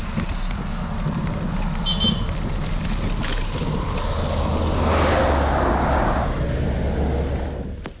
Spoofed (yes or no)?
no